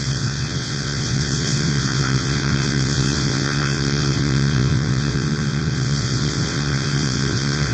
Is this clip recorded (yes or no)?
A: no